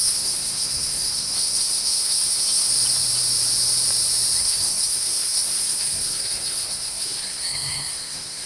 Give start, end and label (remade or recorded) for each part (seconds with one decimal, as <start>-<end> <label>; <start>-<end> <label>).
0.0-2.7 remade; 2.7-4.4 recorded; 4.4-8.5 remade